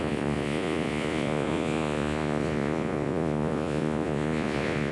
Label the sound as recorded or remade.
remade